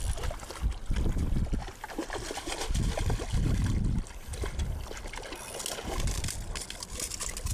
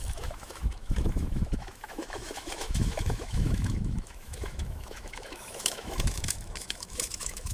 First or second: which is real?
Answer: first